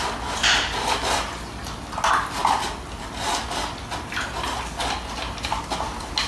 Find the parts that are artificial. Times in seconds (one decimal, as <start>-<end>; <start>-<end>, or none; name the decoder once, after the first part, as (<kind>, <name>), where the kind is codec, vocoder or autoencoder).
none

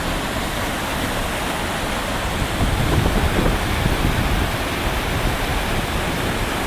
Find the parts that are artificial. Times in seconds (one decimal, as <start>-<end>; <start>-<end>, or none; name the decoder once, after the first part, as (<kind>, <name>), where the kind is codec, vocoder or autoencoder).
none

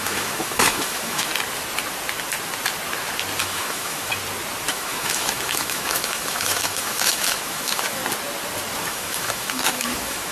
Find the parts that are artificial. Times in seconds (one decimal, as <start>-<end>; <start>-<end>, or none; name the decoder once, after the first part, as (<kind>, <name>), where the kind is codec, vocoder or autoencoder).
0.0-1.3 (autoencoder, DAC-VAE); 3.4-4.1; 4.7-8.0; 8.9-10.3